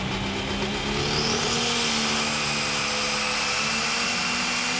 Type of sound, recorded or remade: recorded